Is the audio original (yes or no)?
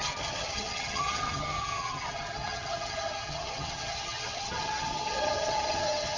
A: no